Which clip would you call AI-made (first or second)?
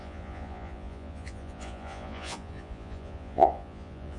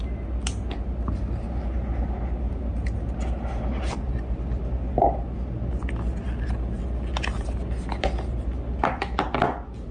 first